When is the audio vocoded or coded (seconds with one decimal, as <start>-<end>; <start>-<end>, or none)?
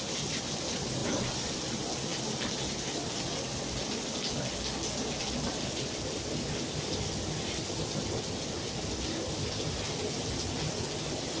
none